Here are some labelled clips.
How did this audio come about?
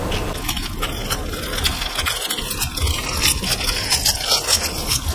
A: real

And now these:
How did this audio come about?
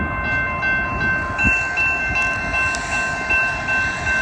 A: real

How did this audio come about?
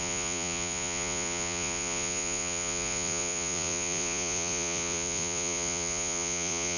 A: fake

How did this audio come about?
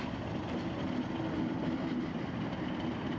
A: real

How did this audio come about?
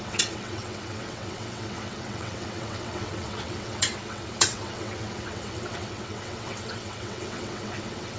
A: fake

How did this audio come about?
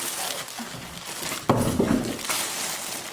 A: real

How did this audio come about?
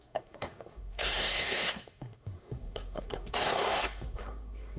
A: fake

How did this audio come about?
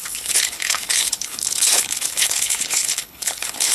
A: fake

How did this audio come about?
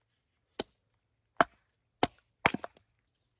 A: real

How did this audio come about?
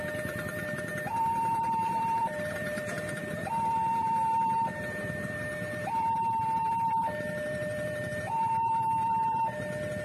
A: fake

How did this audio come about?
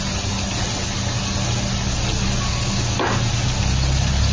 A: real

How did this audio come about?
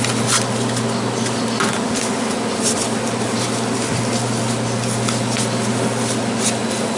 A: real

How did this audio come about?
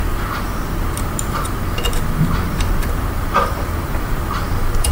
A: real